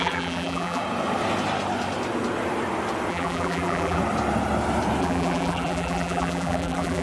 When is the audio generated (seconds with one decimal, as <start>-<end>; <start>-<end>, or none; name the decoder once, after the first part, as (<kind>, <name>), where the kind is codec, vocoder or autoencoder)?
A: 0.0-0.8 (vocoder, BigVGAN v2); 3.1-4.0; 5.0-7.0